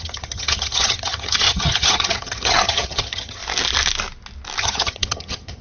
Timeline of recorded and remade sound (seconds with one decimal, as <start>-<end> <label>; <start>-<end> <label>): 0.0-3.4 remade; 3.4-4.6 recorded; 4.6-5.6 remade